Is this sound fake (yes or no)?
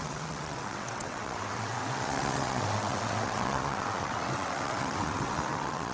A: yes